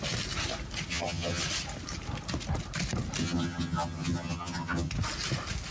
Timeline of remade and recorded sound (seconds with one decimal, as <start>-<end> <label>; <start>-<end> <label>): 0.0-0.9 recorded; 0.9-1.4 remade; 1.4-3.2 recorded; 3.2-4.9 remade; 4.9-5.7 recorded